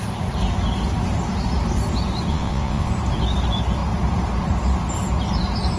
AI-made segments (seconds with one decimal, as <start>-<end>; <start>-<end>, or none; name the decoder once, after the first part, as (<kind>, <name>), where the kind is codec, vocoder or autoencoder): 2.3-2.9 (vocoder, WaveNeXt)